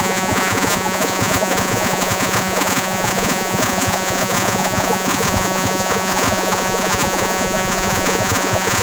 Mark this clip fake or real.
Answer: fake